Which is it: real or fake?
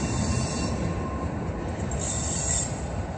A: real